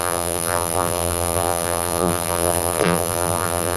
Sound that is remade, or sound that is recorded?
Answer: remade